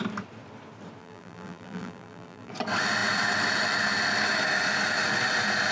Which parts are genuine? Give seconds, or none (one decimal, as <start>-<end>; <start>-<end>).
0.0-1.0; 2.5-5.7